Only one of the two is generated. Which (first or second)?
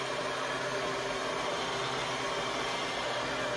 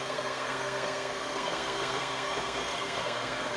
second